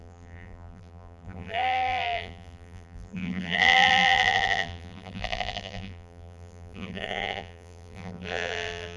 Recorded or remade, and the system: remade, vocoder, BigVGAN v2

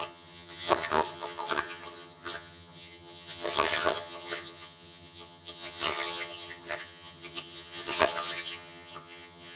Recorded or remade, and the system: remade, vocoder, HiFi-GAN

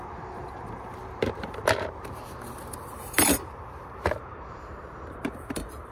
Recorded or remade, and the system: remade, vocoder, BigVGAN v2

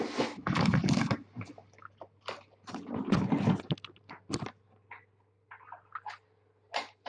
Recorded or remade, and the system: recorded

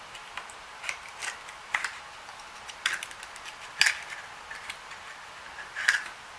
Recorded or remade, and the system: recorded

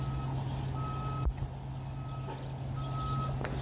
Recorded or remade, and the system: recorded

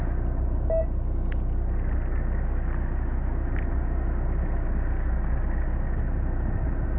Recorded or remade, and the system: recorded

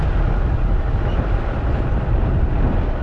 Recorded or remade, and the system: recorded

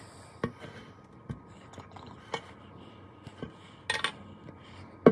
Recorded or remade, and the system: recorded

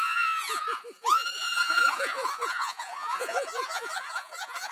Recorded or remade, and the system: remade, vocoder, Vocos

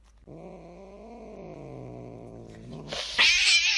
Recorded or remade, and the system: recorded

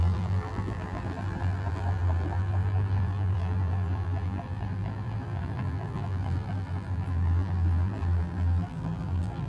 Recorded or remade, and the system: remade, vocoder, BigVGAN v2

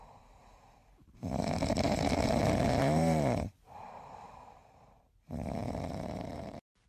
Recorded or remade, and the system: remade, vocoder, BigVGAN v2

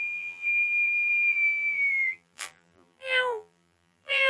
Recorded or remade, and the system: remade, vocoder, BigVGAN v2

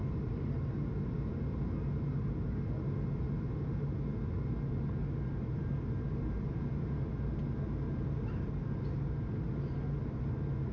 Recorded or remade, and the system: recorded